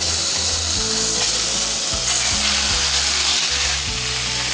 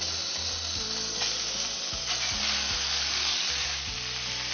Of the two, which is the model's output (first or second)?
second